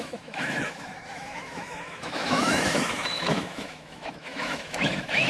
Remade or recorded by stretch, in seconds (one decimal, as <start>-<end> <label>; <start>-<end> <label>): 0.0-5.3 remade